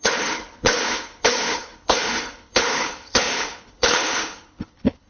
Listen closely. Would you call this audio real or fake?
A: fake